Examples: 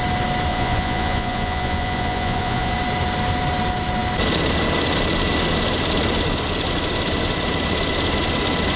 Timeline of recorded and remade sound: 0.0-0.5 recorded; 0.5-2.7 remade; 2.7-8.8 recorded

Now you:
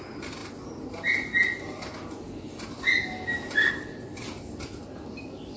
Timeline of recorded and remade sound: 0.0-5.6 recorded

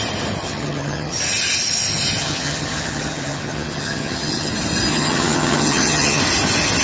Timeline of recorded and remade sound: 0.0-0.4 recorded; 0.4-1.2 remade; 1.2-2.2 recorded; 2.2-4.5 remade; 4.5-4.9 recorded; 4.9-6.2 remade; 6.2-6.8 recorded

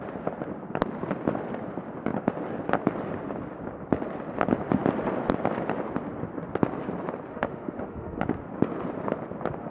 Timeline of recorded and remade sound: 0.0-7.3 recorded; 7.3-8.2 remade; 8.2-9.7 recorded